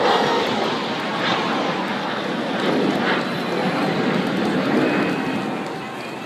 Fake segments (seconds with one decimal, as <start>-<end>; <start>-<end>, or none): none